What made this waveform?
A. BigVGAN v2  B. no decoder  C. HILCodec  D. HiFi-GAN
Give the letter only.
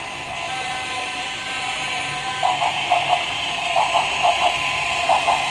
B